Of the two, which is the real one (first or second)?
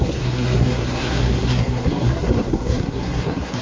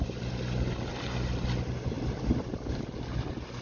second